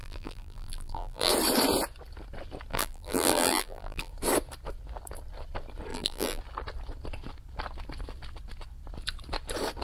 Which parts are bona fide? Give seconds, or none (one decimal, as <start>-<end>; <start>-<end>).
1.3-2.7; 4.1-5.9; 6.4-9.8